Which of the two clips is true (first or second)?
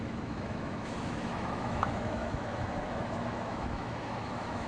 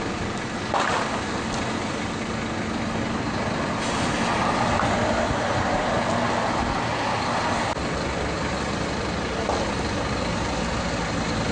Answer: second